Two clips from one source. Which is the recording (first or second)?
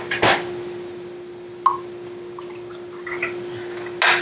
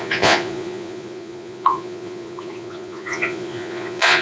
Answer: first